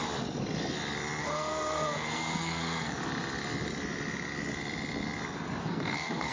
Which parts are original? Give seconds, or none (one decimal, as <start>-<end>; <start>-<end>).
0.0-1.2; 3.0-5.6